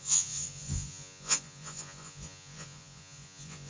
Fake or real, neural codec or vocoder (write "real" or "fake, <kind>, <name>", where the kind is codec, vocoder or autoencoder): fake, vocoder, Vocos